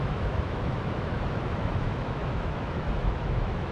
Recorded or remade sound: remade